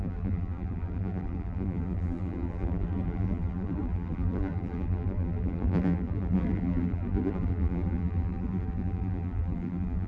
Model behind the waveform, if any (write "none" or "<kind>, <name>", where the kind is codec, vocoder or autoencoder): vocoder, BigVGAN v2